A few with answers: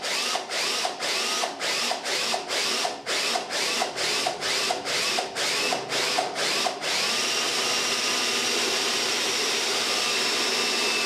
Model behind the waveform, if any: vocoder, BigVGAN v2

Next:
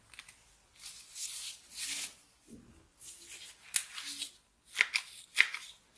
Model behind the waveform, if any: none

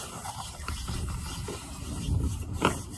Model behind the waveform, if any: vocoder, BigVGAN v2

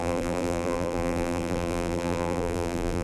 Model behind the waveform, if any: vocoder, BigVGAN v2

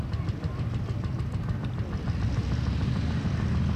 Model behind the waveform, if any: none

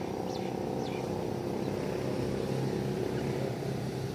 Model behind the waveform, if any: none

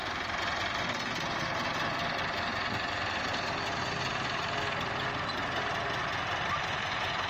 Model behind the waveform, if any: none